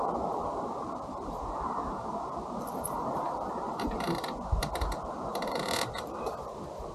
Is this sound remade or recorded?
remade